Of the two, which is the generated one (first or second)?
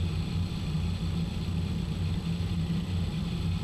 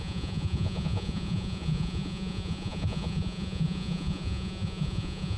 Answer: second